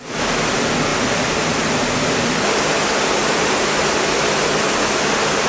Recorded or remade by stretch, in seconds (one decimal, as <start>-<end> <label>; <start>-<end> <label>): 0.0-3.2 recorded; 3.2-5.1 remade; 5.1-5.5 recorded

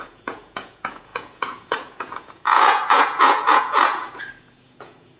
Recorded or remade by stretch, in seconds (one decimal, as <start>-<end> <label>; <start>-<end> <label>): 0.0-5.2 remade

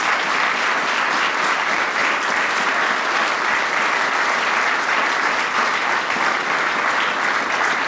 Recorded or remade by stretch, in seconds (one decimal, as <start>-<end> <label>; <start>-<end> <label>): 0.0-7.9 recorded